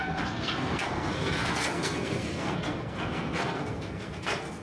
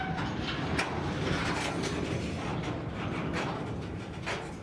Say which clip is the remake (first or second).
first